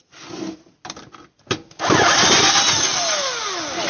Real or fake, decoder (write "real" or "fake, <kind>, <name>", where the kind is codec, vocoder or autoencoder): real